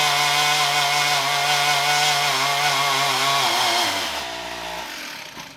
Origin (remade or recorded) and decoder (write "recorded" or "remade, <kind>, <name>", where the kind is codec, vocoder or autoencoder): recorded